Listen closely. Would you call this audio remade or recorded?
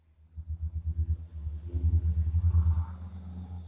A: recorded